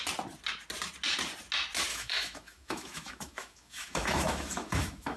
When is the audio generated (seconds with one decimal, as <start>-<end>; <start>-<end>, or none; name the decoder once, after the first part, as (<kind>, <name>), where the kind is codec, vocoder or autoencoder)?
1.9-5.2 (autoencoder, DAC-VAE)